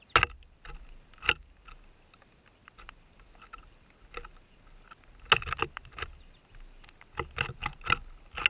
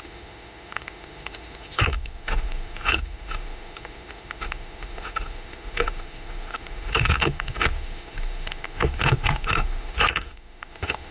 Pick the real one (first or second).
first